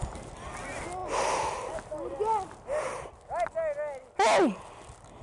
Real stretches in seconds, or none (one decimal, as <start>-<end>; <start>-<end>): 0.0-5.2